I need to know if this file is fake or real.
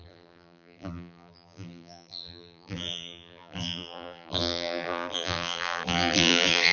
fake